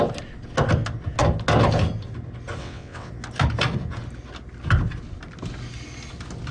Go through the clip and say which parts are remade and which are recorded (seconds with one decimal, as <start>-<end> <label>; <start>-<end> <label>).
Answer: 0.0-2.6 recorded; 2.6-3.1 remade; 3.1-6.5 recorded